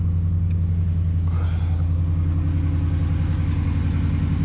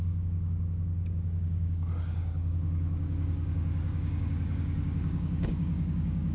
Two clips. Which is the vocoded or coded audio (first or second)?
second